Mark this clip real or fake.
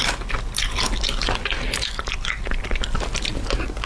real